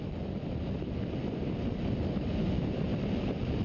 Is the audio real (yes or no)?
yes